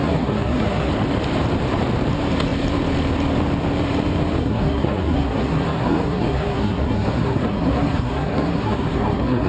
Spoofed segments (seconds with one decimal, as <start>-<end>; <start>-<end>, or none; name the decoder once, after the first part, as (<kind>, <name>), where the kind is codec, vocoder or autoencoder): 0.0-0.9 (codec, SNAC); 4.4-9.5